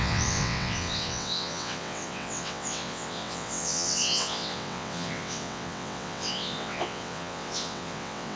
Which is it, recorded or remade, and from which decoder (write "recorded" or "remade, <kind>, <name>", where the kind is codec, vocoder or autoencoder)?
remade, vocoder, WaveNeXt